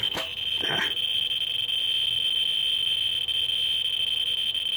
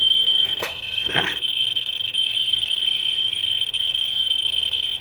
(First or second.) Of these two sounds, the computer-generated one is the second